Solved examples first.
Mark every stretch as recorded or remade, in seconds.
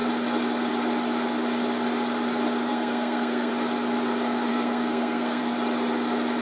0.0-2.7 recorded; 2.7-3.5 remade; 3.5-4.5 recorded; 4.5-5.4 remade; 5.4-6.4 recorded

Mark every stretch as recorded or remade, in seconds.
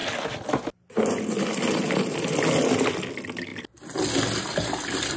0.0-5.2 recorded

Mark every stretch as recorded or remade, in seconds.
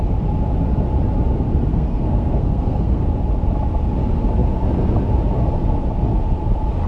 0.0-1.7 recorded; 1.7-3.0 remade; 3.0-6.9 recorded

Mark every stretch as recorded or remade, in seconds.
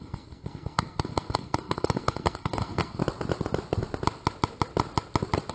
0.0-3.0 remade; 3.0-5.5 recorded